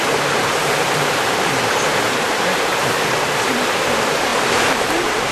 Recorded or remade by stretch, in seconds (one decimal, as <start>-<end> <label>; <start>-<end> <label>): 0.0-5.3 remade